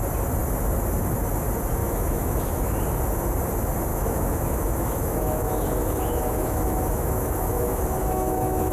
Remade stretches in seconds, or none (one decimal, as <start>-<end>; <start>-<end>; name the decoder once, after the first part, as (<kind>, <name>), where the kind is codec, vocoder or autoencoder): 1.8-2.8 (autoencoder, DAC-VAE); 3.9-8.7